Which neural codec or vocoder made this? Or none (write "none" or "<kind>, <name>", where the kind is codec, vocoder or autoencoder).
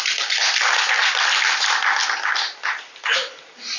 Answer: none